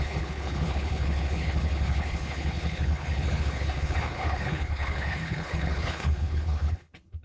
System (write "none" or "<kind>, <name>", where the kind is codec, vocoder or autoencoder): codec, HILCodec